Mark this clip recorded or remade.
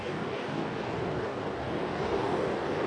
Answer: remade